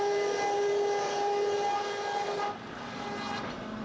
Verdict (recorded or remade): recorded